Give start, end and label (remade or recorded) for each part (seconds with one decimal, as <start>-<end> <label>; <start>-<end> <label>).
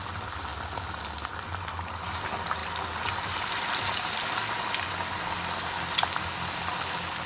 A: 0.0-7.3 recorded